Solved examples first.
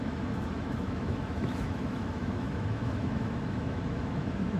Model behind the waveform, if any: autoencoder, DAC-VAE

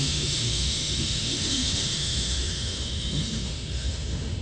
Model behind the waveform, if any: autoencoder, DAC-VAE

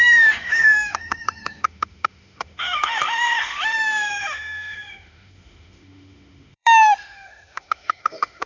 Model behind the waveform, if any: autoencoder, DAC-VAE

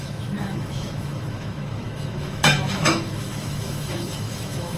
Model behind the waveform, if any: autoencoder, DAC-VAE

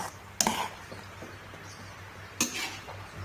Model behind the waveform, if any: none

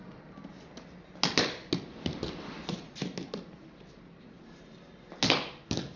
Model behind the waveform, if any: none